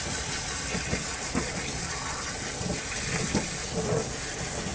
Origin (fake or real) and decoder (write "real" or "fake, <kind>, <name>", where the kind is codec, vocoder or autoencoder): real